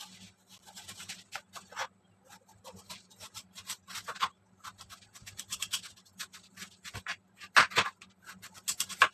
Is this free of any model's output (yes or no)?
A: yes